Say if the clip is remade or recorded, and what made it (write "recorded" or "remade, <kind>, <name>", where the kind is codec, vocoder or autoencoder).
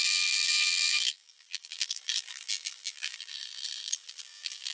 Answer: remade, vocoder, BigVGAN v2